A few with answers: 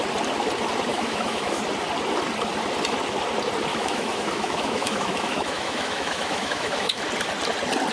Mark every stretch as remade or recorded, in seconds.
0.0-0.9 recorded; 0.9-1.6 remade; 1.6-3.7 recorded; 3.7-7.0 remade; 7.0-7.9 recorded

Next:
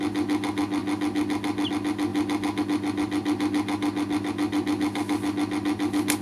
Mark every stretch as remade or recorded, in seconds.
0.0-6.2 recorded

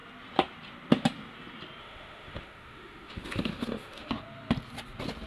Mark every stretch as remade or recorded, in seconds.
0.0-1.8 recorded; 1.8-4.1 remade; 4.1-5.3 recorded

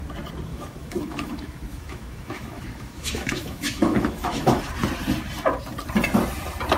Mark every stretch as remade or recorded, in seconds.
0.0-0.5 recorded; 0.5-4.6 remade; 4.6-6.8 recorded

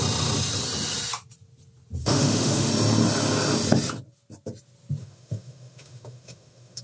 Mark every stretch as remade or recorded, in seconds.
0.0-2.0 recorded; 2.0-2.7 remade; 2.7-5.0 recorded; 5.0-6.8 remade